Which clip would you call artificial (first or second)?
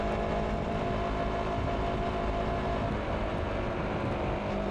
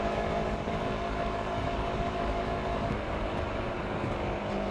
second